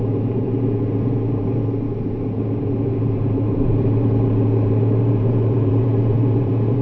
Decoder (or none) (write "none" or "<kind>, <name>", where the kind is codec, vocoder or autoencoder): vocoder, BigVGAN v2